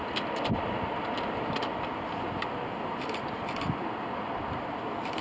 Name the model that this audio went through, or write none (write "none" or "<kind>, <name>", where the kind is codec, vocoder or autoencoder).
none